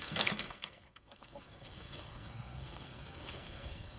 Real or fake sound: fake